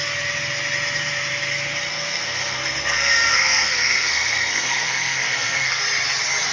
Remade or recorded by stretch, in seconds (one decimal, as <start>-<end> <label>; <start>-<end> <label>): 0.0-1.9 recorded; 1.9-5.8 remade; 5.8-6.5 recorded